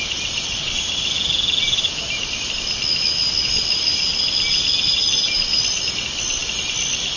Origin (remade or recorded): recorded